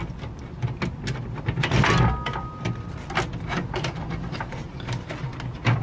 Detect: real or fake real